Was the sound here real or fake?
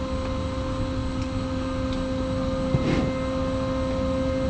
real